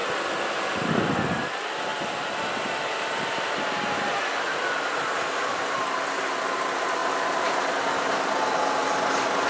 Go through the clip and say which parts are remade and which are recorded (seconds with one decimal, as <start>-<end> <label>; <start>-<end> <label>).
0.0-0.5 remade; 0.5-9.5 recorded

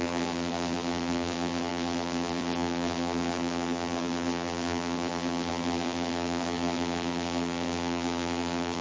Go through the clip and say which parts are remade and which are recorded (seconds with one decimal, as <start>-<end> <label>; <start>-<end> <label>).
0.0-8.8 remade

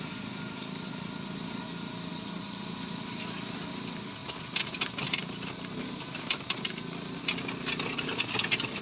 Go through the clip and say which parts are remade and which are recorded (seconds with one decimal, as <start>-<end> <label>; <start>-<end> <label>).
0.0-2.1 recorded; 2.1-2.6 remade; 2.6-8.8 recorded

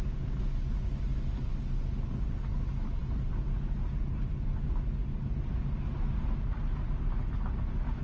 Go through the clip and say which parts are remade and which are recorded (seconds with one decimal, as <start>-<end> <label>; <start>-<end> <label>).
0.0-8.0 recorded